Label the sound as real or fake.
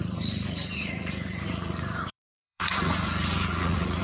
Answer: fake